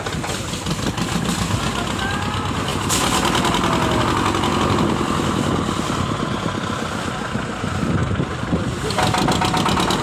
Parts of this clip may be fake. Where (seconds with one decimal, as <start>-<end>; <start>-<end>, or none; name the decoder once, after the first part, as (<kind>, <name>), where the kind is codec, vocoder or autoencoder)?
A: none